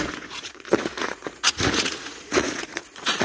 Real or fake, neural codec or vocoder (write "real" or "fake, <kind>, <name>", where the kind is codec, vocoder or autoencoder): fake, vocoder, Vocos